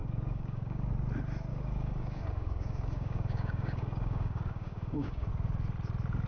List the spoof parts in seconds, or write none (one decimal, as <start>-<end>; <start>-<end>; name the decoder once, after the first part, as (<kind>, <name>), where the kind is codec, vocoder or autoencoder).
0.0-0.9 (codec, DAC); 1.5-5.3

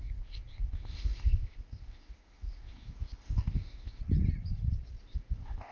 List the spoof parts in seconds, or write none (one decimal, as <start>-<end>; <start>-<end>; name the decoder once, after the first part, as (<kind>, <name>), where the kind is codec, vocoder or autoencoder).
0.0-4.0 (codec, ZipCodec); 5.0-5.7